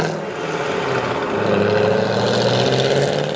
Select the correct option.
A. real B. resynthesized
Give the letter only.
A